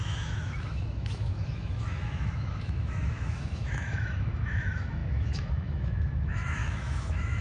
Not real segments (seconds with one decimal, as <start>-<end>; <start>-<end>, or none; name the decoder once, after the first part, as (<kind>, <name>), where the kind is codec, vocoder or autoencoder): 0.0-7.4 (autoencoder, DAC-VAE)